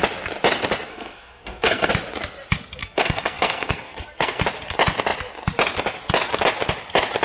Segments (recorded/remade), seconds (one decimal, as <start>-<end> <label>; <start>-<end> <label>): 0.0-0.9 recorded; 0.9-1.9 remade; 1.9-2.8 recorded; 2.8-4.4 remade; 4.4-7.2 recorded

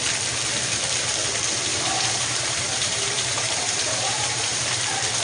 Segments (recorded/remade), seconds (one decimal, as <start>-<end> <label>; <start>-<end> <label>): 0.0-1.7 recorded; 1.7-4.8 remade; 4.8-5.2 recorded

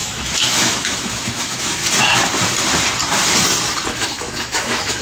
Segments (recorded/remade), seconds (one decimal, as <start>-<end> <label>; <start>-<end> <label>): 0.0-1.8 remade; 1.8-3.9 recorded; 3.9-5.0 remade

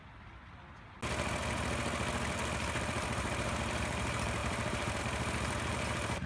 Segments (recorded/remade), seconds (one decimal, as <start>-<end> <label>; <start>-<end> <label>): 0.0-2.8 recorded; 2.8-6.3 remade